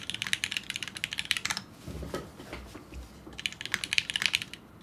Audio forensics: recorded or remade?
recorded